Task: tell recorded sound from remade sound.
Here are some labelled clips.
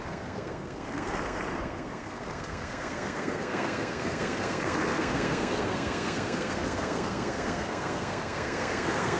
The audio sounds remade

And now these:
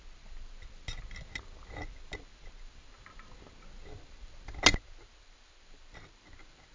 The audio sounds recorded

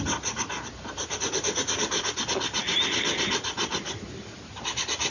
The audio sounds recorded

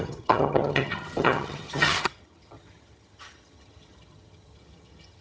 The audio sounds remade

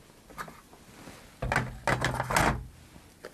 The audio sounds recorded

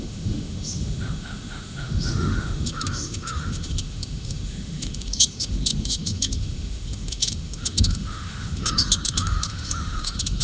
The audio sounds remade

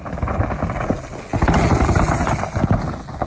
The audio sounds recorded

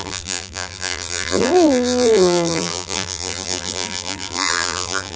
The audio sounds remade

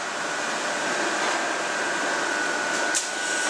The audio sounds recorded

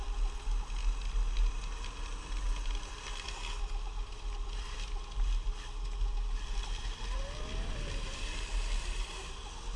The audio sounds recorded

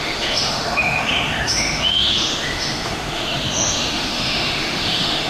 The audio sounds remade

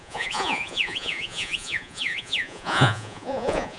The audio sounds remade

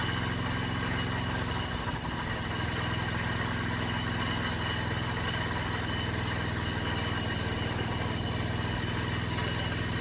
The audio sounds recorded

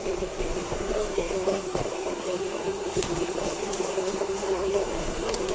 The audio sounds remade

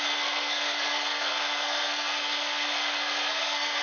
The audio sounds remade